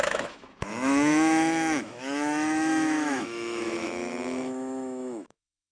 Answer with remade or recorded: remade